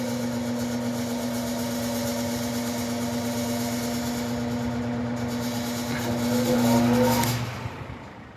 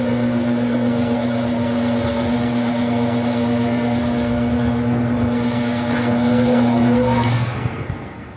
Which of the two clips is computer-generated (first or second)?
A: second